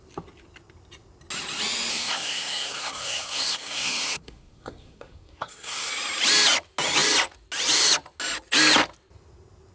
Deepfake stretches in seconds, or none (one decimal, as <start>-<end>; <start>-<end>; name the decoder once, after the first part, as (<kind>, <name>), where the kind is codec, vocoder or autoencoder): 1.9-5.9 (codec, SNAC)